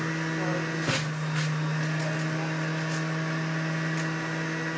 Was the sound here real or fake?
real